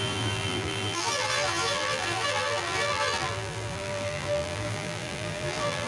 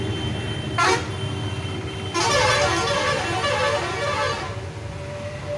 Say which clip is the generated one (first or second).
first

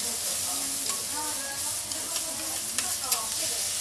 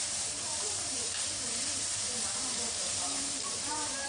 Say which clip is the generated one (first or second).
second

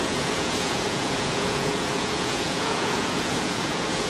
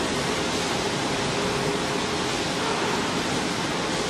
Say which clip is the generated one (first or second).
first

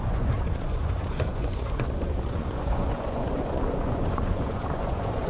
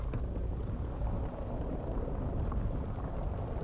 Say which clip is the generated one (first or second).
first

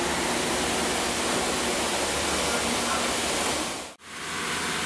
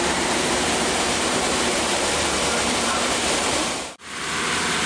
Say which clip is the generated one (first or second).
second